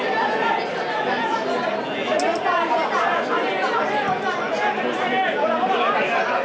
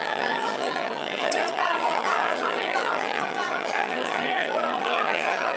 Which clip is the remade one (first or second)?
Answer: second